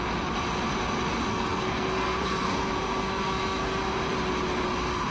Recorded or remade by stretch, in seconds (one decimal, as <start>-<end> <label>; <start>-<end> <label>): 0.0-1.3 recorded; 1.3-3.8 remade; 3.8-5.1 recorded